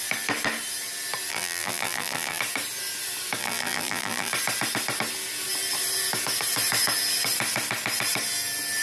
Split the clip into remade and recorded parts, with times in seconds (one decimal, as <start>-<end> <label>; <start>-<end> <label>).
0.0-1.3 recorded; 1.3-2.4 remade; 2.4-3.4 recorded; 3.4-4.3 remade; 4.3-8.8 recorded

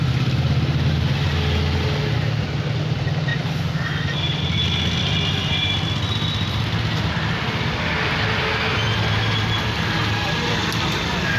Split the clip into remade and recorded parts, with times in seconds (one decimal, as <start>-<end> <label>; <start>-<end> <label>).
0.0-11.4 recorded

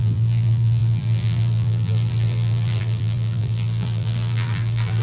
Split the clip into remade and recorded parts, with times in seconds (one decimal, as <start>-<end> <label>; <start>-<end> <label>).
0.0-5.0 remade

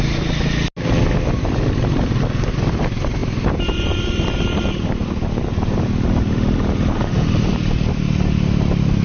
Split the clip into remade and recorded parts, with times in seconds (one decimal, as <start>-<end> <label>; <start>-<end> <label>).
0.0-3.2 recorded; 3.2-4.6 remade; 4.6-9.0 recorded

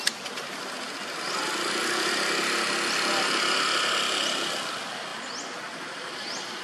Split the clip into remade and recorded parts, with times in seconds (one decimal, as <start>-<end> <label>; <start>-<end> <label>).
0.0-6.6 recorded

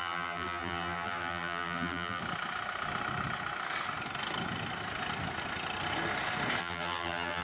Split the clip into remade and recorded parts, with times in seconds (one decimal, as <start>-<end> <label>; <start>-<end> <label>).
0.0-2.2 remade; 2.2-6.6 recorded; 6.6-7.4 remade

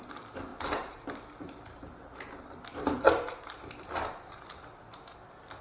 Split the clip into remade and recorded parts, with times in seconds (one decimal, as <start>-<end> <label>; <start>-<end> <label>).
0.0-0.5 recorded; 0.5-2.4 remade; 2.4-5.6 recorded

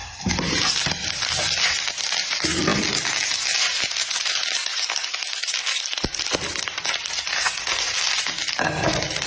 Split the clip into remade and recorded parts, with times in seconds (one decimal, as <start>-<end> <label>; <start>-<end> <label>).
0.0-9.3 recorded